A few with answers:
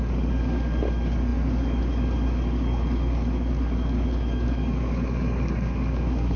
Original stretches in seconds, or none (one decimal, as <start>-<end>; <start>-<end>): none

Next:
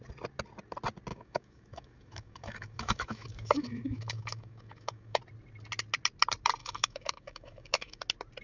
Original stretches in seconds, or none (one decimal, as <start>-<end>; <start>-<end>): 0.0-1.1; 5.2-6.6; 8.0-8.4

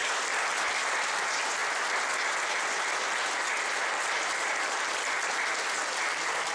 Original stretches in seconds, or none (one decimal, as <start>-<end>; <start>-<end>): 0.0-6.5

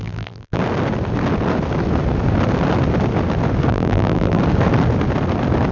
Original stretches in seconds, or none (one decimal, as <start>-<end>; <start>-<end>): 0.6-3.7; 4.4-5.7

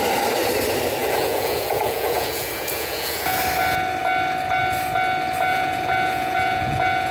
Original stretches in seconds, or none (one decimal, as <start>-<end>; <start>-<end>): 0.0-1.0; 3.4-5.5

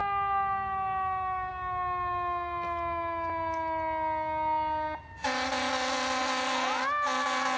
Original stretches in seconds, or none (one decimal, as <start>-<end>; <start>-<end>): 0.0-7.6

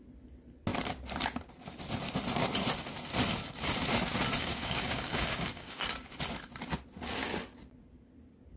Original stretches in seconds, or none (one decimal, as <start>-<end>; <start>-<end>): 0.0-4.4; 5.9-8.6

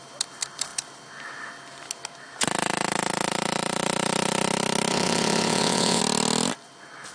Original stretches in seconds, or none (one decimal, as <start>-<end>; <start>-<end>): 0.0-4.9; 6.0-7.1